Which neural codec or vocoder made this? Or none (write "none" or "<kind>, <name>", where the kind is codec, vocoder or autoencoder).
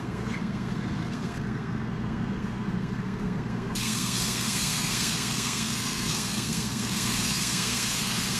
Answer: codec, SNAC